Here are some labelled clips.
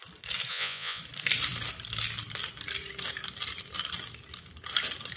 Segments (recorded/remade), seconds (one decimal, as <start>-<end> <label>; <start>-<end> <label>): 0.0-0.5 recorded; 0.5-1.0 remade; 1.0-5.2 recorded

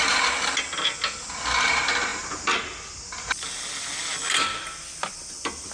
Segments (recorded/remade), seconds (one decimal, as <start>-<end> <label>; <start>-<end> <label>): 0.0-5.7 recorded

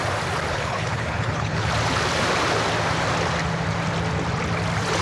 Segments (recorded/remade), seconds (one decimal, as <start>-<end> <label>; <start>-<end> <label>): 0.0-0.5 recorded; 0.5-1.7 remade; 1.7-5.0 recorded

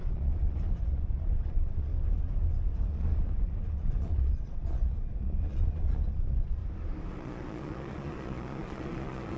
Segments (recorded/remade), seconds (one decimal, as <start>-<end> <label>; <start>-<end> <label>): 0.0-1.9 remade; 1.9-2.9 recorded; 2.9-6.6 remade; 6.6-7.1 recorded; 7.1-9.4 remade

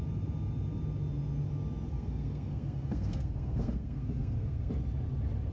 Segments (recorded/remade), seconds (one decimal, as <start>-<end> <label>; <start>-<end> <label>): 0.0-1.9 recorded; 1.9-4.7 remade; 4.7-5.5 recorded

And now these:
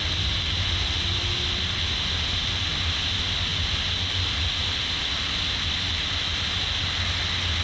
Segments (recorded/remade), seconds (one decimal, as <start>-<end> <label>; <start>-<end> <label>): 0.0-7.6 recorded

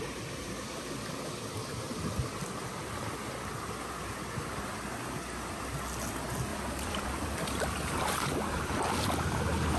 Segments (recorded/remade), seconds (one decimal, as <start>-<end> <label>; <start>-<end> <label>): 0.0-2.4 recorded; 2.4-3.2 remade; 3.2-6.5 recorded; 6.5-7.6 remade; 7.6-9.8 recorded